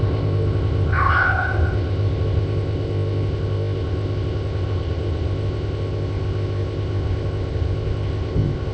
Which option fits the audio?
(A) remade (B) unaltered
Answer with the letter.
A